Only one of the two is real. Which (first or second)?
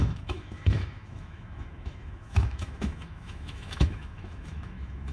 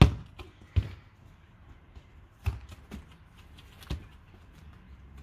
second